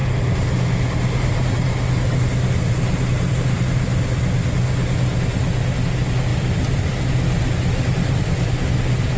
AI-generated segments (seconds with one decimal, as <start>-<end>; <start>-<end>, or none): 6.3-8.5